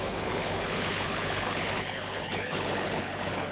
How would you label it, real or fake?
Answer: fake